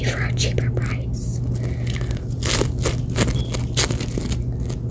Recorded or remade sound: recorded